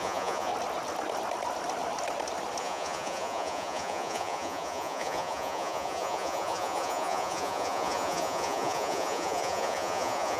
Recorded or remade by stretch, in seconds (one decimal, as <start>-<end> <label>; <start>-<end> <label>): 0.0-0.5 remade; 0.5-2.6 recorded; 2.6-10.4 remade